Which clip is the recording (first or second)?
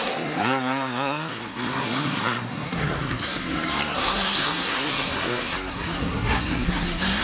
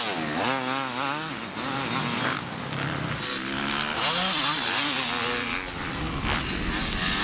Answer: second